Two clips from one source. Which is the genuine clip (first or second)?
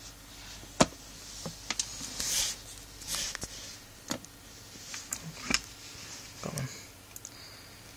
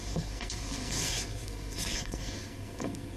first